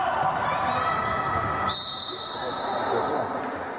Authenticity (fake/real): real